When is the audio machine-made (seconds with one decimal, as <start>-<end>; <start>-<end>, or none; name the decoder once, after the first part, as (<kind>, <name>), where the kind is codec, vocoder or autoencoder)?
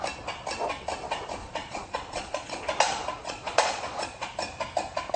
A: 1.4-2.6 (vocoder, Vocos); 3.2-4.3